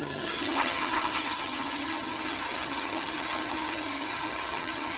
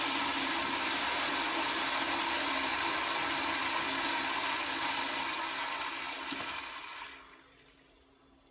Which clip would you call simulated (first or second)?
first